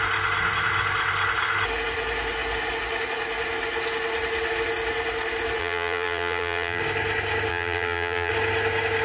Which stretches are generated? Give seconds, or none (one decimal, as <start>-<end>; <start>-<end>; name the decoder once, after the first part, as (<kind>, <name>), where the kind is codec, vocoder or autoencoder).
5.6-6.8 (vocoder, BigVGAN v2); 7.5-8.3